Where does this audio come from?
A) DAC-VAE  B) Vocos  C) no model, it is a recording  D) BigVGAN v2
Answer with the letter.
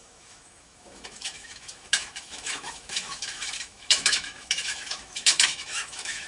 A